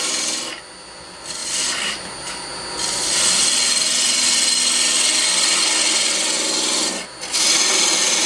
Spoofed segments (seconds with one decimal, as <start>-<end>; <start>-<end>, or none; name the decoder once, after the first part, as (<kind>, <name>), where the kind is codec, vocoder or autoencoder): none